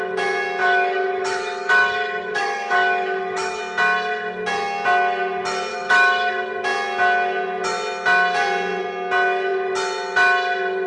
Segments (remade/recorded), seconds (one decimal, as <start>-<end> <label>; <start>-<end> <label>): 0.0-0.6 recorded; 0.6-3.6 remade; 3.6-5.7 recorded; 5.7-6.3 remade; 6.3-10.9 recorded